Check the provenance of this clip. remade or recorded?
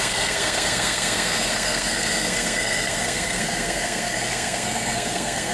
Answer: remade